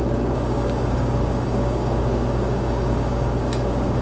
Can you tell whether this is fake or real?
fake